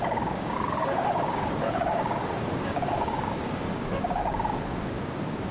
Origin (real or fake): fake